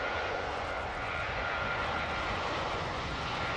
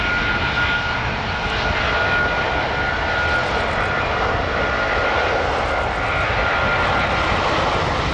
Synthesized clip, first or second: first